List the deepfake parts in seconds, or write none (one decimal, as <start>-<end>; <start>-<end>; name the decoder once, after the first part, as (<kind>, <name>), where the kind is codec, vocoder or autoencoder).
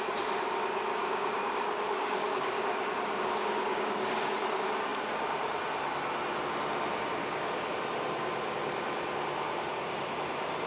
1.0-4.3 (codec, DAC); 7.2-7.7